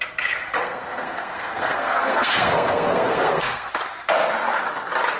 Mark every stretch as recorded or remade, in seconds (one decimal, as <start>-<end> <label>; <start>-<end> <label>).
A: 0.0-0.6 recorded; 0.6-3.7 remade; 3.7-5.2 recorded